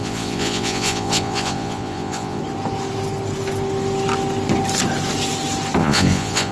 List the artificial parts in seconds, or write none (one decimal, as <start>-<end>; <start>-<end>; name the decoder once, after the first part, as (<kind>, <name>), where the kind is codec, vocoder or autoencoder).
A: 0.0-2.4 (vocoder, Vocos); 5.8-6.5